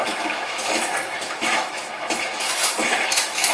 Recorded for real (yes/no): no